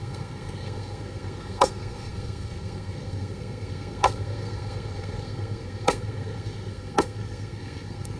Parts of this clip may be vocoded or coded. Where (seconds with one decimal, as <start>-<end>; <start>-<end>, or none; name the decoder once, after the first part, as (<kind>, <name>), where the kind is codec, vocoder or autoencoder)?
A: 0.0-8.2 (codec, SNAC)